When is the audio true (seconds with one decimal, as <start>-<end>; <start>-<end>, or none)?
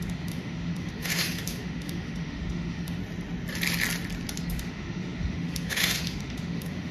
3.0-4.4